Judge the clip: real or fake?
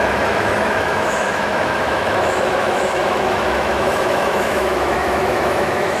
fake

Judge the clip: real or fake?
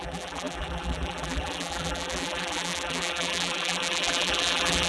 fake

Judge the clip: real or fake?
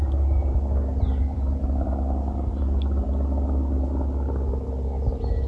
real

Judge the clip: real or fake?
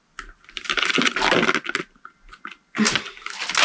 real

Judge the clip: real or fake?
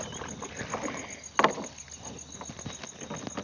real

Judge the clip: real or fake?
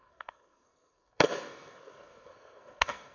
fake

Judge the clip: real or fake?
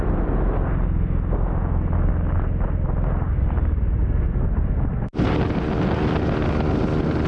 real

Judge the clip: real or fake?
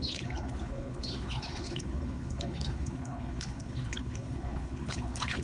fake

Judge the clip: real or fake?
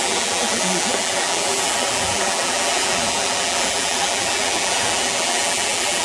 fake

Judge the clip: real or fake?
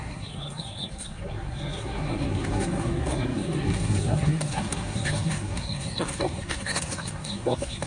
fake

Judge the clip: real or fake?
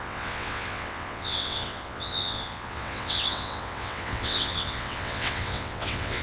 fake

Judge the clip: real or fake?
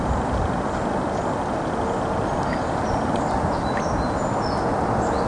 real